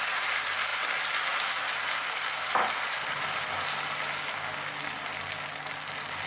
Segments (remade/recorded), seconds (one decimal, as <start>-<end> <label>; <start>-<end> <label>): 0.0-6.3 recorded

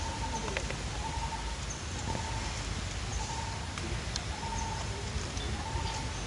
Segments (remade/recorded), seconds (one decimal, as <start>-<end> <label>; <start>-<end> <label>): 0.0-6.3 recorded

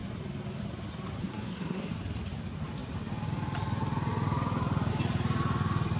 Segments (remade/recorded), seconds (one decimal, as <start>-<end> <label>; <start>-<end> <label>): 0.0-1.2 recorded; 1.2-1.9 remade; 1.9-6.0 recorded

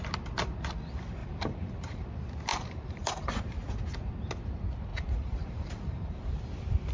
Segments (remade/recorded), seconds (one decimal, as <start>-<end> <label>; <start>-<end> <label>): 0.0-1.2 recorded; 1.2-2.1 remade; 2.1-2.5 recorded; 2.5-3.4 remade; 3.4-4.9 recorded; 4.9-6.3 remade; 6.3-6.9 recorded